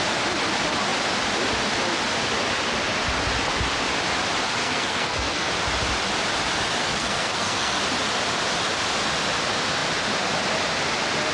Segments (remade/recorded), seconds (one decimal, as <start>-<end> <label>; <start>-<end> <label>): 0.0-4.6 recorded; 4.6-5.5 remade; 5.5-6.8 recorded; 6.8-7.8 remade; 7.8-11.3 recorded